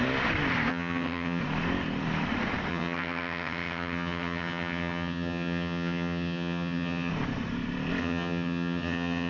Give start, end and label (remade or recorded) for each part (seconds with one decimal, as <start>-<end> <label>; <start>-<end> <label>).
0.0-0.7 recorded; 0.7-1.4 remade; 1.4-2.7 recorded; 2.7-7.1 remade; 7.1-8.0 recorded; 8.0-9.3 remade